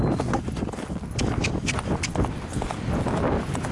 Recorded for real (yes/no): yes